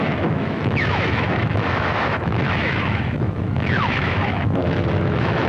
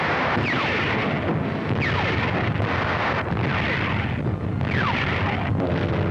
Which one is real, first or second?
second